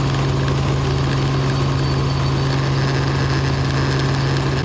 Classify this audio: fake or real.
real